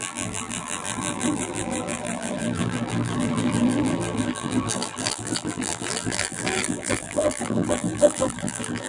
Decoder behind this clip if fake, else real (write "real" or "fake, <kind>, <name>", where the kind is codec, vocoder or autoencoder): fake, vocoder, BigVGAN v2